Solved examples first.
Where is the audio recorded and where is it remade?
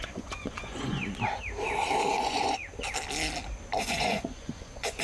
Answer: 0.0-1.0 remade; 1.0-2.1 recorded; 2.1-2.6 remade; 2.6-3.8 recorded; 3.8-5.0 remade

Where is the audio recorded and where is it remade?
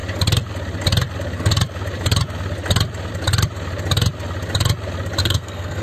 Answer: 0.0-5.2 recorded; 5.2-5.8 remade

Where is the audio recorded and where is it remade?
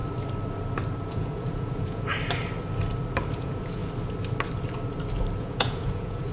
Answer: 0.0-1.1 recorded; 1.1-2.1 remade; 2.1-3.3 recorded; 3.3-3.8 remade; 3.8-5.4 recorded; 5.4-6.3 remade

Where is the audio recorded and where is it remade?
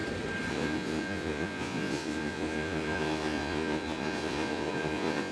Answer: 0.0-0.5 recorded; 0.5-5.3 remade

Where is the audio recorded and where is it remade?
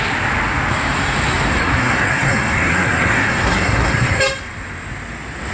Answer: 0.0-1.5 recorded; 1.5-4.2 remade; 4.2-5.5 recorded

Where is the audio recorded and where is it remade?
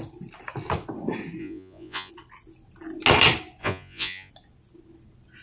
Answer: 0.0-1.4 recorded; 1.4-2.1 remade; 2.1-3.6 recorded; 3.6-4.3 remade; 4.3-5.4 recorded